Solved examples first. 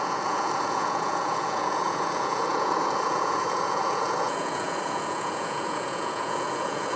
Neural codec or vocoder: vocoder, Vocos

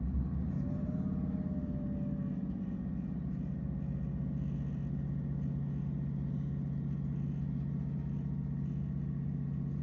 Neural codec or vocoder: none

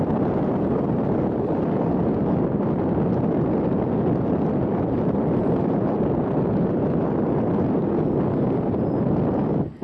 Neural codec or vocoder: none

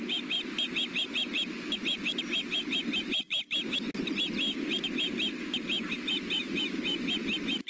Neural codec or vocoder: none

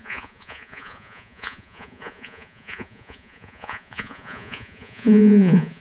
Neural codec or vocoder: vocoder, Vocos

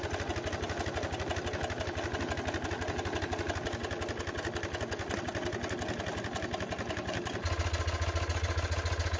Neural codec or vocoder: none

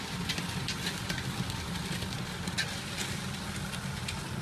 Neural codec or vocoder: none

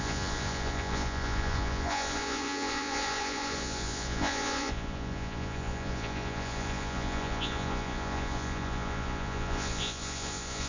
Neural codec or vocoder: vocoder, Vocos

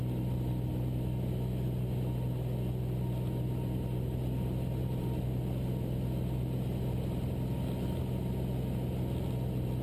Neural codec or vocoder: none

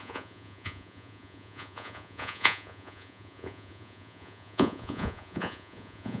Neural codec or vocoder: vocoder, Vocos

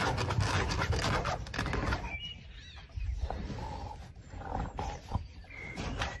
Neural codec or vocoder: none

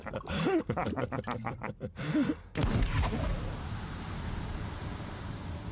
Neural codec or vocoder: none